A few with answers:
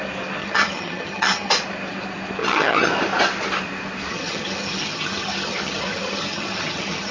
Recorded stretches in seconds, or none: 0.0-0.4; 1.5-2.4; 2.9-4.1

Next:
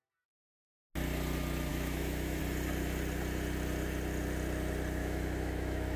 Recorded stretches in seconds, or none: 0.0-1.7; 2.4-5.0

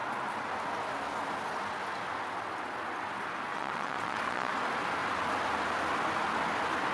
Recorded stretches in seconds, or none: 0.0-3.5; 4.5-6.9

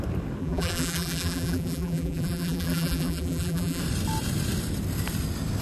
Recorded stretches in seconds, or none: 0.0-0.4; 3.8-5.6

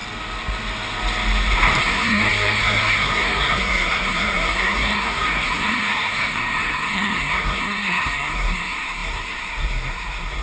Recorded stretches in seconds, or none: 0.0-1.8

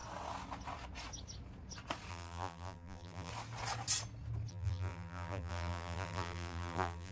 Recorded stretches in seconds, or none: 0.0-2.1; 3.3-4.5

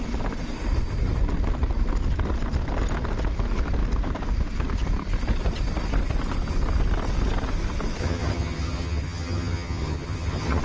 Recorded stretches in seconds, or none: 0.0-8.0